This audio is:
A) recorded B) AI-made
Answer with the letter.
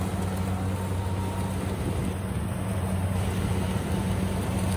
A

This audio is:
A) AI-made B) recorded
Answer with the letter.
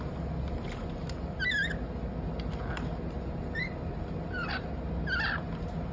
B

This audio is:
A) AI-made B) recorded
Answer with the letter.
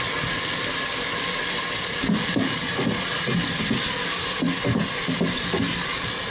B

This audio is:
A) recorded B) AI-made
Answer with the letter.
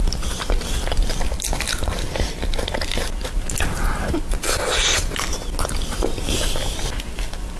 A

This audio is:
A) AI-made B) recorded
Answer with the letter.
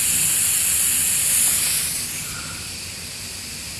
B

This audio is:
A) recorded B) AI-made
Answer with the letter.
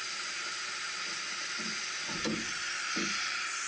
A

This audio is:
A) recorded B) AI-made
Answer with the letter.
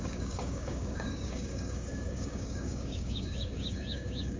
B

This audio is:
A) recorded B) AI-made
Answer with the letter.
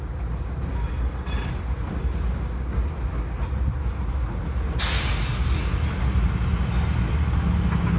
A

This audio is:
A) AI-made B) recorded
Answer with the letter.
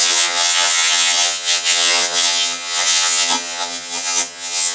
A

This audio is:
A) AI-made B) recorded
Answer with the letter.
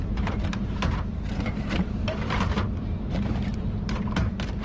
A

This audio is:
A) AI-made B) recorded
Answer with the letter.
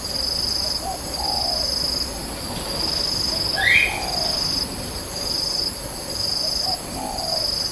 B